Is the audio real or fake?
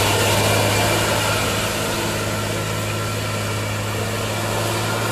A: real